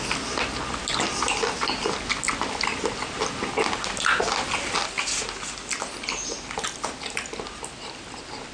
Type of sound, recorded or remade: recorded